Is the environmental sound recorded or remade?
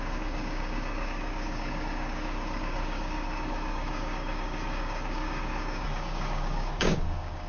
remade